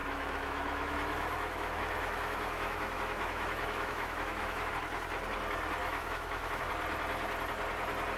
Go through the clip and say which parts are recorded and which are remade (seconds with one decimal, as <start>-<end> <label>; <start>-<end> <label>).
0.0-4.7 remade; 4.7-5.8 recorded; 5.8-6.7 remade; 6.7-8.2 recorded